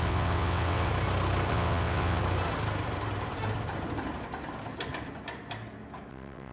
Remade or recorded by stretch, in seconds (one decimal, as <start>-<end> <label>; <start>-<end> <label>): 0.0-0.9 remade; 0.9-1.5 recorded; 1.5-2.2 remade; 2.2-6.1 recorded; 6.1-6.5 remade